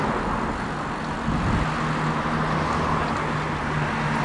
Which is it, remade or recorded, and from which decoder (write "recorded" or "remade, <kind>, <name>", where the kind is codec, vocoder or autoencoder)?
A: recorded